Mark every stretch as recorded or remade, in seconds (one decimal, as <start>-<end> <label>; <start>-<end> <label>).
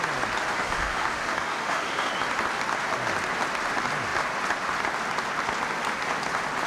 0.0-0.5 recorded; 0.5-2.1 remade; 2.1-6.7 recorded